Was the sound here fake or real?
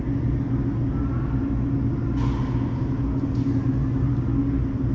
real